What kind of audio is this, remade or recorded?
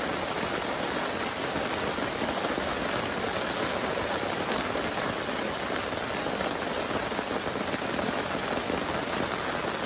recorded